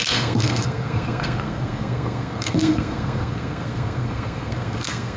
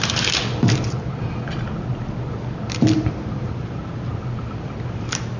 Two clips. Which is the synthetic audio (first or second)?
first